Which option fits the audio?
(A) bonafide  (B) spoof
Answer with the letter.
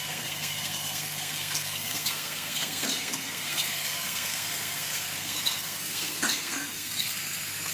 B